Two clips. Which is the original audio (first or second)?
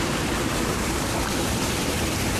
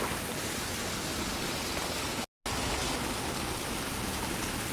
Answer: second